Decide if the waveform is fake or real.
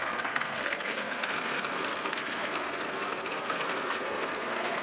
fake